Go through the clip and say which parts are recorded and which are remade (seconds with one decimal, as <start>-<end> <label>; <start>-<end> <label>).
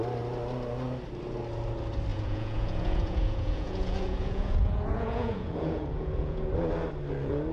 0.0-2.1 recorded; 2.1-6.5 remade; 6.5-7.5 recorded